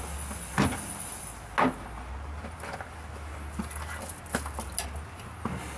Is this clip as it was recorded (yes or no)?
yes